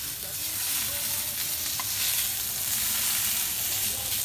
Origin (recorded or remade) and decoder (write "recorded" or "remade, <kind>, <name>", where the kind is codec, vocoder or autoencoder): recorded